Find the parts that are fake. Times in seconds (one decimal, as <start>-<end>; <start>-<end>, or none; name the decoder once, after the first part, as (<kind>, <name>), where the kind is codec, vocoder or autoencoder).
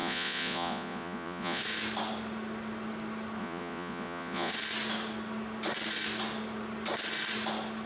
0.0-1.6 (vocoder, Vocos); 3.4-4.5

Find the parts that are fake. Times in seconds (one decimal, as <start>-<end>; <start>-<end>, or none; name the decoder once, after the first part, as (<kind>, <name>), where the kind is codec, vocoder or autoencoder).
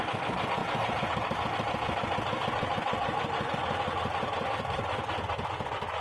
none